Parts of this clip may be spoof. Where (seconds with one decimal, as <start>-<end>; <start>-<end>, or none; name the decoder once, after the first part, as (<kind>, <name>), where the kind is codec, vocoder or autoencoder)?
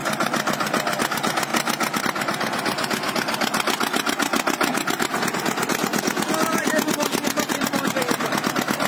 none